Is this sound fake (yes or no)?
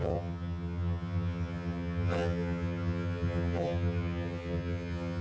yes